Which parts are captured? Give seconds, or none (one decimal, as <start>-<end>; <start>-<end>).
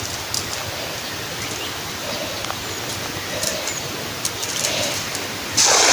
0.0-5.9